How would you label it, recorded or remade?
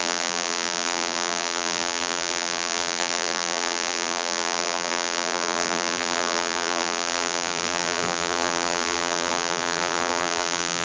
remade